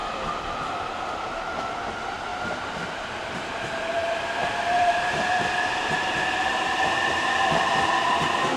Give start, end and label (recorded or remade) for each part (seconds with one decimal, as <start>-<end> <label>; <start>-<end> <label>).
0.0-8.6 remade